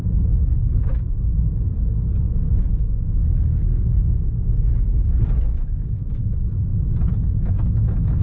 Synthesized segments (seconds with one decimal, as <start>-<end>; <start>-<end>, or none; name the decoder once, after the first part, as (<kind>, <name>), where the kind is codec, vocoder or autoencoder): 3.6-6.3 (codec, DAC)